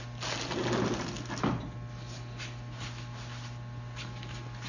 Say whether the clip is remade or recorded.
recorded